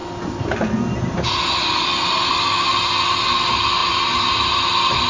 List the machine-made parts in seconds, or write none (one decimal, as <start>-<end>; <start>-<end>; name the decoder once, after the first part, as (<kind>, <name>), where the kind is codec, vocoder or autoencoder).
none